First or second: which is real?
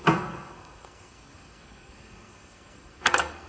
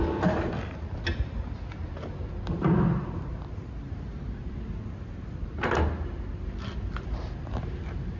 second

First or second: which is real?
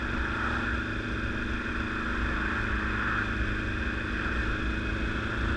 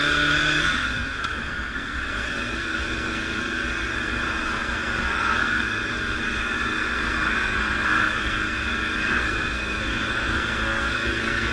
first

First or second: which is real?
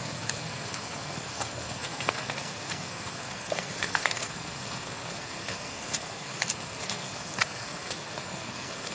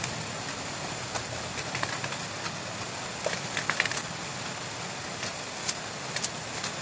second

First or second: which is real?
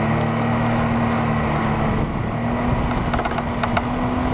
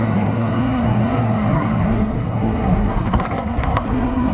first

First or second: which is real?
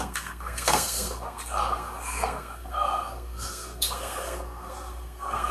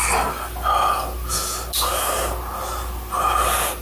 second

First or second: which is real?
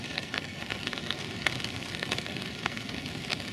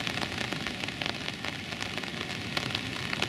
second